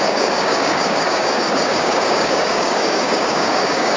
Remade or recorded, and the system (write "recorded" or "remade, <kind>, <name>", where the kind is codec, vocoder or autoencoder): remade, codec, DAC